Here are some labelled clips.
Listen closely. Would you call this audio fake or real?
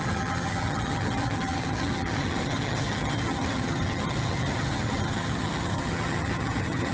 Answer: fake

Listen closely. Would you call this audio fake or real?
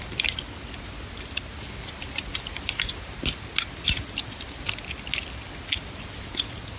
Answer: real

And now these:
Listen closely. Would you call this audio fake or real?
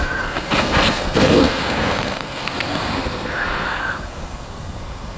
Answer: fake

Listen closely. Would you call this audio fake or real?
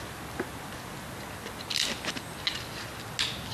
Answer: real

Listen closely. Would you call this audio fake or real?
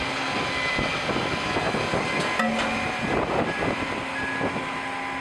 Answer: real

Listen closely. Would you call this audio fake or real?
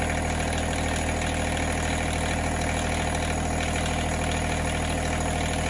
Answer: real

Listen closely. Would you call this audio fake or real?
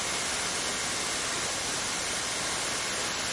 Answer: real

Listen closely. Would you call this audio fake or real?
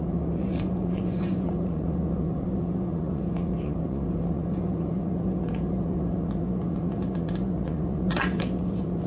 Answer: fake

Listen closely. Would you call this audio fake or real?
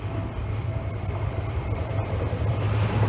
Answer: fake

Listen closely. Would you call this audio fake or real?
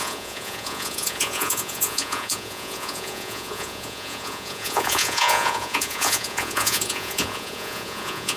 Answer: fake